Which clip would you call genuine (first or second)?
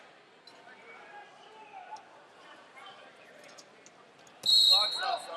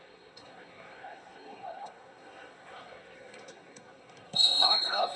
first